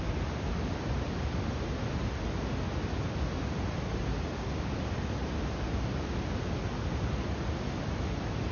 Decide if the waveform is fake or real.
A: real